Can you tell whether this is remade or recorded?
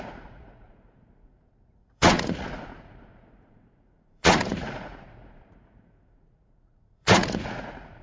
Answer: remade